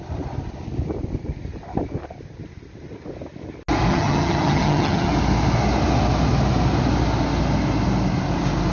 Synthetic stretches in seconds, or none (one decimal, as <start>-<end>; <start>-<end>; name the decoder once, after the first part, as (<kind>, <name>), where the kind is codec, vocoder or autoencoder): 3.9-5.1 (vocoder, HiFi-GAN)

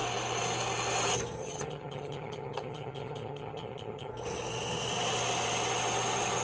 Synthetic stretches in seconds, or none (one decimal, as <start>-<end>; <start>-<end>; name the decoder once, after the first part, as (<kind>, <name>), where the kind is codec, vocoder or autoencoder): 1.4-4.1 (vocoder, HiFi-GAN)